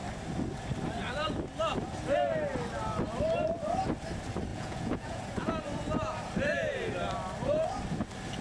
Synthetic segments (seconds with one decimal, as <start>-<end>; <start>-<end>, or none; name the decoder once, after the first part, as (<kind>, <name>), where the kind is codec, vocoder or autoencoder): 4.5-5.2 (vocoder, Vocos)